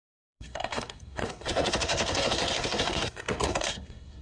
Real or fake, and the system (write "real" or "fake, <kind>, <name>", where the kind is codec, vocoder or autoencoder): fake, codec, SNAC